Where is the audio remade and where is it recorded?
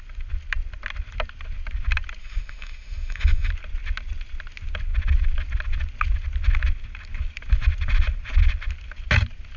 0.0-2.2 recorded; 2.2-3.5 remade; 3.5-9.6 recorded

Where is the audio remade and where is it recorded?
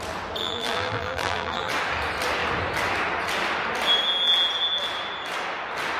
0.0-0.4 recorded; 0.4-1.7 remade; 1.7-6.0 recorded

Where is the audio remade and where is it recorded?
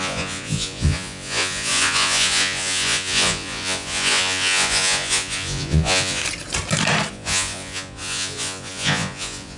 0.0-6.2 remade; 6.2-7.1 recorded; 7.1-9.6 remade